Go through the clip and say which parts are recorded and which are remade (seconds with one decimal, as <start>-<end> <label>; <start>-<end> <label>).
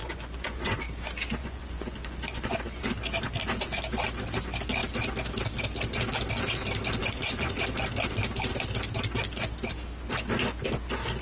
0.0-0.8 remade; 0.8-1.4 recorded; 1.4-2.8 remade; 2.8-7.0 recorded; 7.0-7.6 remade; 7.6-11.2 recorded